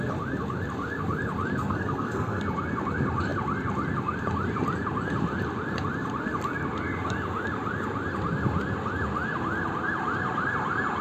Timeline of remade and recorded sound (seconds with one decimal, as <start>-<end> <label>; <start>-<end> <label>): 0.0-1.6 recorded; 1.6-2.4 remade; 2.4-11.0 recorded